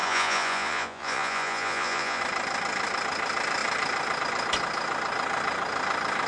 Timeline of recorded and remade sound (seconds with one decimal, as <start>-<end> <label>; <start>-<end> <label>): 0.0-2.2 remade; 2.2-6.3 recorded